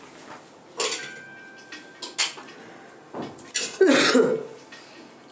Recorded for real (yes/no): yes